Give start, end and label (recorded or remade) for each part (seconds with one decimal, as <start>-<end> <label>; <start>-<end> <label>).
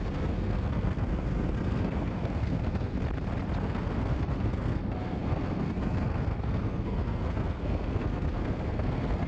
0.0-2.9 remade; 2.9-3.6 recorded; 3.6-9.3 remade